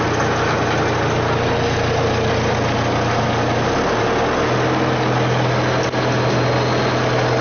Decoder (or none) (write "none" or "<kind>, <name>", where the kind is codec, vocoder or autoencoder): none